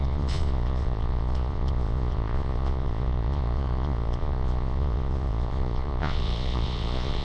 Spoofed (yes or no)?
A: yes